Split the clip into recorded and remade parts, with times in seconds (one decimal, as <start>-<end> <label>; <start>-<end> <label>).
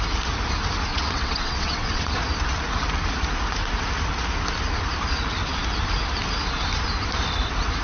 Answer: 0.0-0.9 recorded; 0.9-2.1 remade; 2.1-7.8 recorded